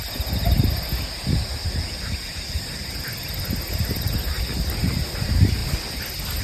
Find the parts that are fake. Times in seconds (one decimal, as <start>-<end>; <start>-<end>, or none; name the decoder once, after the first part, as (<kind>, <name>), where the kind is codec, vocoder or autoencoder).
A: none